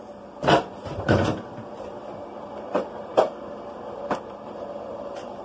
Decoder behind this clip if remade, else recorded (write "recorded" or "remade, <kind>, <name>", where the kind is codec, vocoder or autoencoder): remade, vocoder, BigVGAN v2